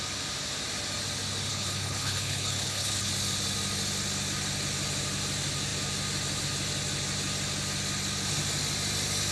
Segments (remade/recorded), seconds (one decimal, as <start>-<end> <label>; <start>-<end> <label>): 0.0-1.5 recorded; 1.5-3.1 remade; 3.1-9.3 recorded